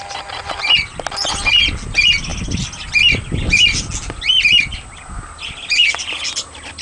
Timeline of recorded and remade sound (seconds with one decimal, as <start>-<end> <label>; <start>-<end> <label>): 0.0-6.8 recorded